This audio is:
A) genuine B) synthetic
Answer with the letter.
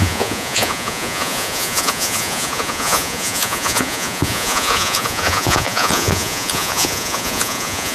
B